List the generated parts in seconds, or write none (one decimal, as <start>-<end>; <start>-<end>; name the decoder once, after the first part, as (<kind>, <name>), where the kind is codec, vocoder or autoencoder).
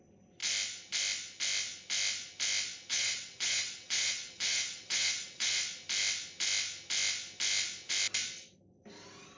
2.9-5.6 (vocoder, WaveNeXt)